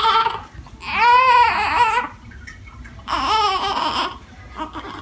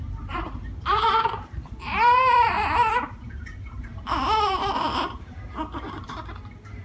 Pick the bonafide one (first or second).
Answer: first